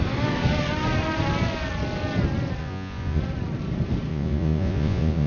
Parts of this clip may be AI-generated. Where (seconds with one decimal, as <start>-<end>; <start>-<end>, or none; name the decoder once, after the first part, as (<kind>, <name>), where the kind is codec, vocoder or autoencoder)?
2.6-3.2 (vocoder, Vocos); 4.1-5.3